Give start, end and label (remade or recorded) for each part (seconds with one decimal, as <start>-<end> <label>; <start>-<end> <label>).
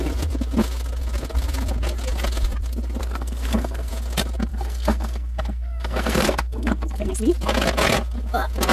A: 0.0-3.0 recorded; 3.0-3.9 remade; 3.9-4.5 recorded; 4.5-7.1 remade; 7.1-8.7 recorded